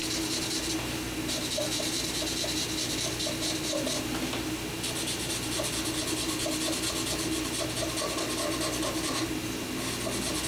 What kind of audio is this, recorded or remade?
recorded